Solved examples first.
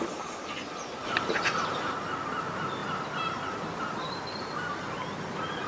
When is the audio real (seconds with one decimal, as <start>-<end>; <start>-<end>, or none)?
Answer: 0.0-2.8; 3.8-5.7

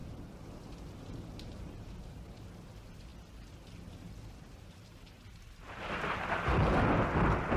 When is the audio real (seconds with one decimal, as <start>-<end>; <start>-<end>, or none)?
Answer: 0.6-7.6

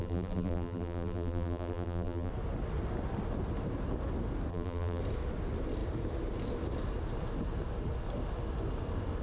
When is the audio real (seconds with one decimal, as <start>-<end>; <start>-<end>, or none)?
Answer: 2.3-4.5; 5.0-9.2

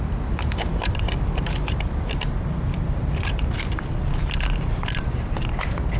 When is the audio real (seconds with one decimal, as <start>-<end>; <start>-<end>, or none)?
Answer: 0.0-0.7; 4.0-6.0

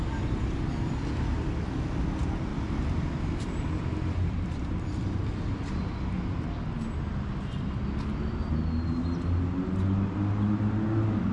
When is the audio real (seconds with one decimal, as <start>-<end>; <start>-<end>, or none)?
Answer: 0.0-2.5; 6.4-11.3